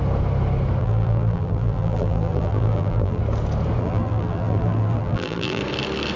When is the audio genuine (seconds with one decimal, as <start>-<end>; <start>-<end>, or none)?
0.0-0.8; 3.2-3.8; 5.6-6.2